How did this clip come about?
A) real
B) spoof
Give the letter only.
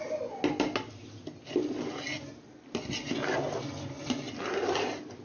A